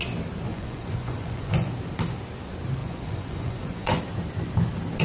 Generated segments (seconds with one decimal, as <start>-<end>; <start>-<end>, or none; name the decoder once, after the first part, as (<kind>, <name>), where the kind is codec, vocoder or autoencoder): 0.5-1.7 (vocoder, Vocos); 2.8-4.0